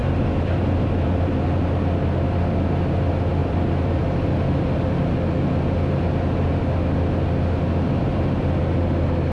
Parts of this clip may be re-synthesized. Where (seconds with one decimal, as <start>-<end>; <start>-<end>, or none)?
0.0-1.4; 3.4-4.5; 8.1-8.6

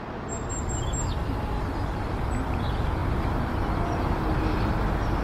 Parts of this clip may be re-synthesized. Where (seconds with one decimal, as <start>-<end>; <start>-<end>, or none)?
1.2-2.0; 3.0-4.7

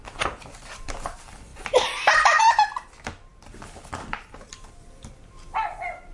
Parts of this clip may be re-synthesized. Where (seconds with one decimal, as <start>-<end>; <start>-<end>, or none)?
0.0-6.1